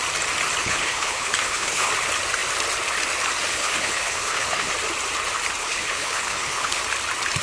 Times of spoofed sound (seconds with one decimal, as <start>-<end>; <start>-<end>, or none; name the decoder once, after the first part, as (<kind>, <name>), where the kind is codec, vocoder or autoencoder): 0.6-1.9 (codec, HILCodec); 3.5-4.7; 5.6-6.8